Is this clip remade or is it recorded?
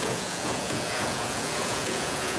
remade